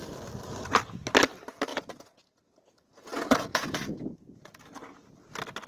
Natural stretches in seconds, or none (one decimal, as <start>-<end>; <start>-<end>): 0.0-1.7; 5.1-5.7